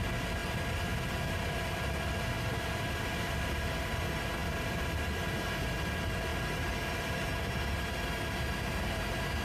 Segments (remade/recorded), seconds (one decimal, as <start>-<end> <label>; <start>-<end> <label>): 0.0-9.4 recorded